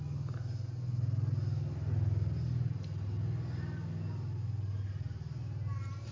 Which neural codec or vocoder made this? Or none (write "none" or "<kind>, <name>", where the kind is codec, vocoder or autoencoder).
none